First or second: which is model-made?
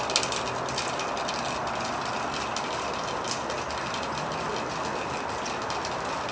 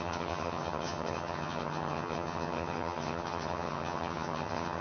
second